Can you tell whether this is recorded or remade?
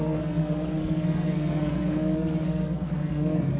remade